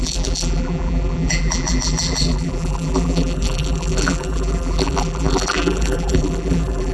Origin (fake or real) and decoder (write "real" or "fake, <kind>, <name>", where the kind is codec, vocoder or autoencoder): fake, vocoder, BigVGAN v2